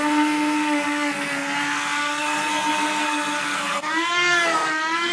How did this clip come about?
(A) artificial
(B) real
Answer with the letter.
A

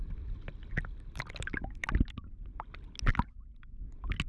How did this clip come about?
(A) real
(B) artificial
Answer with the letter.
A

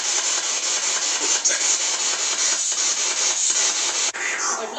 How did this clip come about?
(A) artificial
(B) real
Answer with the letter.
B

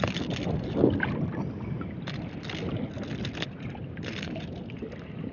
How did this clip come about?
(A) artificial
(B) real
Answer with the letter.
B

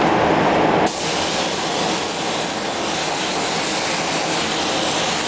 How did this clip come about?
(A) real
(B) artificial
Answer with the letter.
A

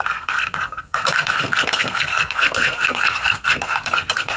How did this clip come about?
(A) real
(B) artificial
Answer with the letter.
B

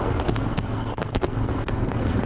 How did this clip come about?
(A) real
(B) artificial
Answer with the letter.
B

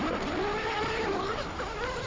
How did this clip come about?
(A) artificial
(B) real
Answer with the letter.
B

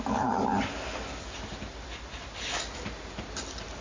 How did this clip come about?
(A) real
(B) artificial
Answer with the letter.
A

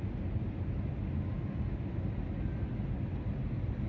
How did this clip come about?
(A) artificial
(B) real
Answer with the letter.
B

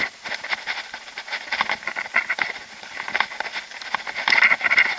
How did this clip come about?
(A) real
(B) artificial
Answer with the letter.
A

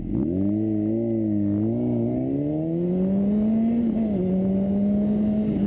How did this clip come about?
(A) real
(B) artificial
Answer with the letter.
A